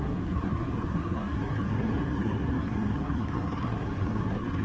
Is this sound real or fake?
fake